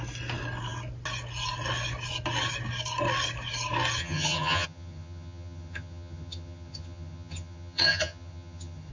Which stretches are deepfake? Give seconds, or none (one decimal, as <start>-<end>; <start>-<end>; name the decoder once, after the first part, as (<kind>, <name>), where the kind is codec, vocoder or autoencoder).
4.0-8.9 (vocoder, HiFi-GAN)